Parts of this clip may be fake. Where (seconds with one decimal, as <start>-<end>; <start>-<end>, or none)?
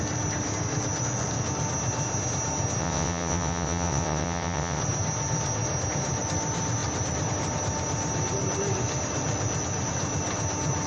2.8-4.8